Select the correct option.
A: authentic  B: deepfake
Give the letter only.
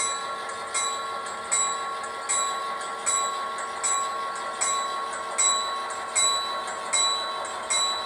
A